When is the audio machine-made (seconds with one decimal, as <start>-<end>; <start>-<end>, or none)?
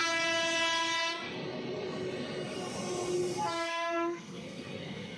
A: 3.5-5.2